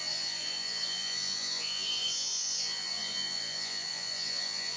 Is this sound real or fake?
fake